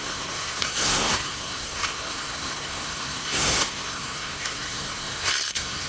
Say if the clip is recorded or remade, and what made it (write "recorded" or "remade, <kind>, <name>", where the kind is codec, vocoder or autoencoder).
remade, codec, SNAC